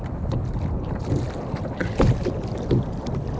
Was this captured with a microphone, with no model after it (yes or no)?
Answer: yes